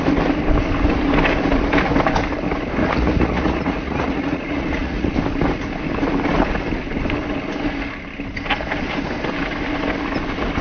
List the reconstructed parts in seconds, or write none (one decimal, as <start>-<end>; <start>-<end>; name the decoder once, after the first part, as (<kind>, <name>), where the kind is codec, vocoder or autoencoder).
2.8-5.1 (vocoder, Vocos)